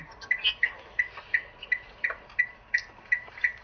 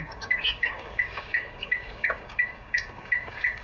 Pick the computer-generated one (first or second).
second